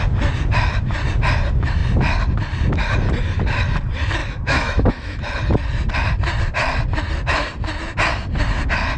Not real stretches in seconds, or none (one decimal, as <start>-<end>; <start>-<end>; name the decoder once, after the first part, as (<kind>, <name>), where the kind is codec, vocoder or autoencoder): 4.2-5.2 (autoencoder, DAC-VAE)